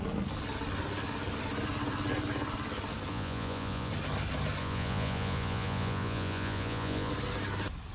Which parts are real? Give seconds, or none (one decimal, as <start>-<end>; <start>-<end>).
0.0-3.1; 3.9-4.6; 7.1-7.9